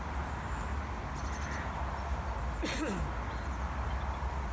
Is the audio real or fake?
real